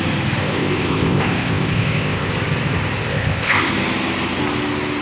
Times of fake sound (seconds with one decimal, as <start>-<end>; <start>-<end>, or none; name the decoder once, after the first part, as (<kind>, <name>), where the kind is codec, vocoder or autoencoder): 0.4-2.3 (codec, ZipCodec); 3.1-3.7